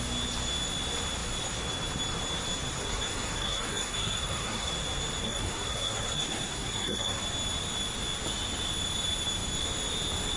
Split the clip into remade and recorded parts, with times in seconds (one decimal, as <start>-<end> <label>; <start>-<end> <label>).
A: 0.0-2.8 recorded; 2.8-4.7 remade; 4.7-5.2 recorded; 5.2-7.2 remade; 7.2-10.4 recorded